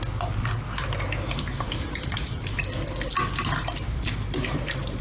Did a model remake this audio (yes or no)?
no